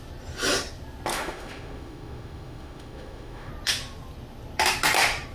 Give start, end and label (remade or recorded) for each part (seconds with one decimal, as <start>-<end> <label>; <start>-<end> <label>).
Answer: 0.0-1.1 recorded; 1.1-3.5 remade; 3.5-5.3 recorded

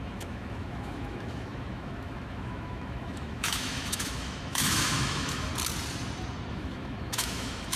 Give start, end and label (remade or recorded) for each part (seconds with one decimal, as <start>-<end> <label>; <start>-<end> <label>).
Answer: 0.0-5.5 remade; 5.5-6.5 recorded; 6.5-7.8 remade